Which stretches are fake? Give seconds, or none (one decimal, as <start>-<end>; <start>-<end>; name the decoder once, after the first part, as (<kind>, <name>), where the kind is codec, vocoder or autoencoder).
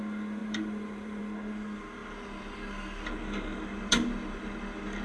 0.4-1.2 (vocoder, BigVGAN v2)